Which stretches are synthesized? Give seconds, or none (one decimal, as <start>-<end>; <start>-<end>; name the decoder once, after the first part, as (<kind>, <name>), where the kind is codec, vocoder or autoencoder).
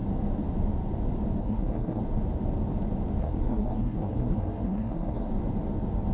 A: 1.4-2.0 (codec, SNAC); 3.2-5.3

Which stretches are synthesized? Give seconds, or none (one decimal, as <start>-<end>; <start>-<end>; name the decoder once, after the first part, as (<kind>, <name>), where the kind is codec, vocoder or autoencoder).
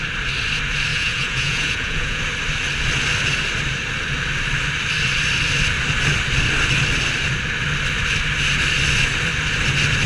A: 0.9-2.2 (vocoder, Vocos)